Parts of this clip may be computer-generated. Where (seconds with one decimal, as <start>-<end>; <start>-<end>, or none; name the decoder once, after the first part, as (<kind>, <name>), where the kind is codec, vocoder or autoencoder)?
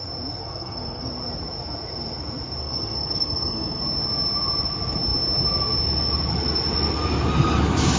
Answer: 0.4-1.1 (codec, SNAC); 2.6-3.8